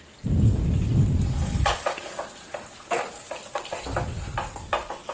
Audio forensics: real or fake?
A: real